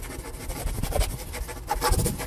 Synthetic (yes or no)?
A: no